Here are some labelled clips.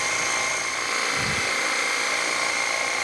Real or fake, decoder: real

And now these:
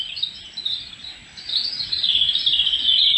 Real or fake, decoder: real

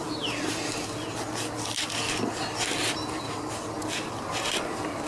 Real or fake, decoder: real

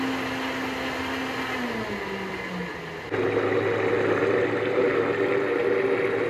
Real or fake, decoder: real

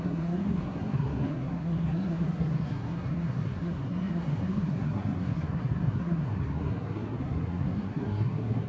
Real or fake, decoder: fake, codec, SNAC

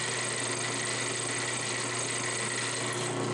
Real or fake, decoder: real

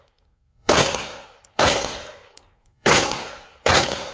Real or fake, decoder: fake, codec, SNAC